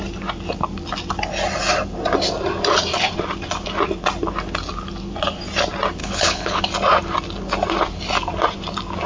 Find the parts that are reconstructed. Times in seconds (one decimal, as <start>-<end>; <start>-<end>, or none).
6.0-6.6